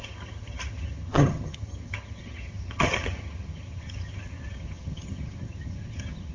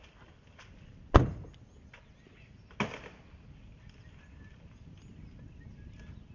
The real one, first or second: second